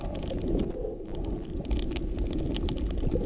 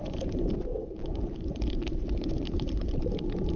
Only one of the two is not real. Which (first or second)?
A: second